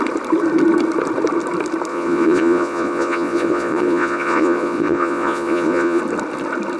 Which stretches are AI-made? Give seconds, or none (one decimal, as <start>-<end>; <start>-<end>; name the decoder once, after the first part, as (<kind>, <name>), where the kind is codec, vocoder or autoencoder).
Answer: 1.9-6.0 (vocoder, Vocos)